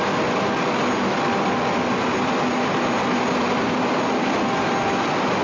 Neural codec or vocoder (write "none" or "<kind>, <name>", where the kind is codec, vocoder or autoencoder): none